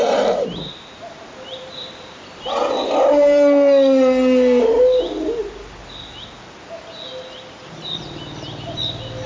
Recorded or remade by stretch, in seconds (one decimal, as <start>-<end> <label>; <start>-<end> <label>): 0.0-2.2 remade; 2.2-9.3 recorded